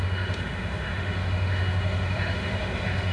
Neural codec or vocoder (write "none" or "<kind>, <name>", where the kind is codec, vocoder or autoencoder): autoencoder, DAC-VAE